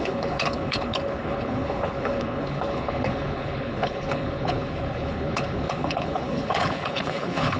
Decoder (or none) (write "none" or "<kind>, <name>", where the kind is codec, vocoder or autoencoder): codec, HILCodec